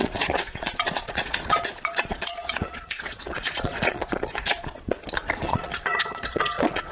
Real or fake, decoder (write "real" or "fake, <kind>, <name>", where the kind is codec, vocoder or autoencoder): fake, vocoder, Vocos